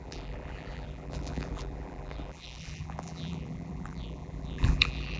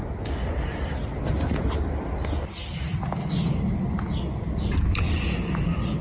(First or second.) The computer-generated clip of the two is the first